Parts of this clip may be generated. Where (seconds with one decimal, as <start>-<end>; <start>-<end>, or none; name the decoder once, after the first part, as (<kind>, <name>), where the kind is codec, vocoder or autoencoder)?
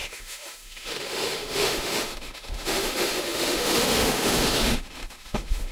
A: 0.0-5.7 (autoencoder, DAC-VAE)